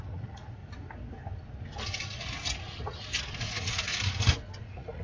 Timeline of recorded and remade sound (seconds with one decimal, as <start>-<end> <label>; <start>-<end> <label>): 0.0-0.6 remade; 0.6-3.4 recorded; 3.4-3.9 remade; 3.9-4.6 recorded; 4.6-5.0 remade